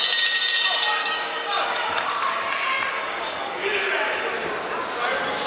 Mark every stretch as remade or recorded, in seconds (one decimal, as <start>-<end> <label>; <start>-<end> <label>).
0.0-1.0 recorded; 1.0-2.1 remade; 2.1-2.9 recorded; 2.9-3.9 remade; 3.9-5.5 recorded